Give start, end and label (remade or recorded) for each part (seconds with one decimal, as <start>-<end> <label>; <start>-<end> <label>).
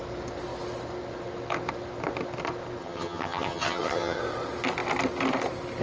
0.0-2.8 recorded; 2.8-4.2 remade; 4.2-5.8 recorded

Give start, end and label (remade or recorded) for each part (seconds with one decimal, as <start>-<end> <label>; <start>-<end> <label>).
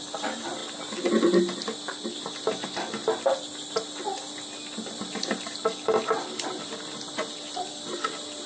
0.0-8.5 recorded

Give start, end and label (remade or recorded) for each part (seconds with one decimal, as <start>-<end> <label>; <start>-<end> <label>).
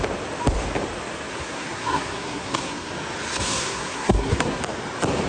0.0-1.3 recorded; 1.3-2.9 remade; 2.9-3.3 recorded; 3.3-4.6 remade; 4.6-5.3 recorded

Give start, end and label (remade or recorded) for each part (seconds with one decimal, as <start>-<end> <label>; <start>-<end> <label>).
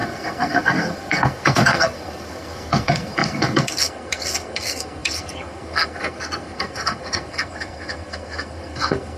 0.0-9.2 remade